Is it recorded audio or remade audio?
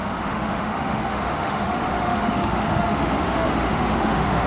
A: remade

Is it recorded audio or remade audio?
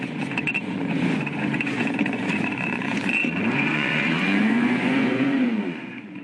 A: remade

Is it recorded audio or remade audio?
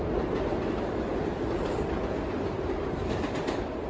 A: recorded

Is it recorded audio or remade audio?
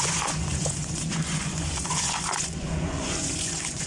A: remade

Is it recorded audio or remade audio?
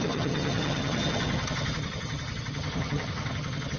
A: remade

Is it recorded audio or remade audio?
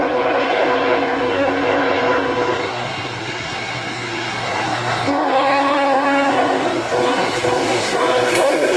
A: remade